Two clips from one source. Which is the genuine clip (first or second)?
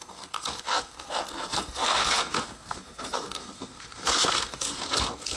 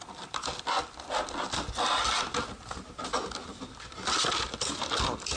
second